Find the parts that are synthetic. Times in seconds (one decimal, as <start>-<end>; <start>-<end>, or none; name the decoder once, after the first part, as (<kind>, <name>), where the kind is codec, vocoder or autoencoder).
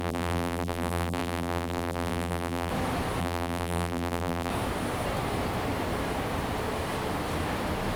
0.0-2.7 (vocoder, BigVGAN v2); 3.2-4.5